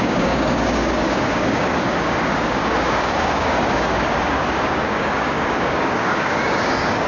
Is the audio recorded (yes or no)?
no